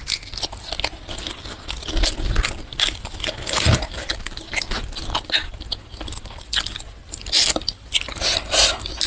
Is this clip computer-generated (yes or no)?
no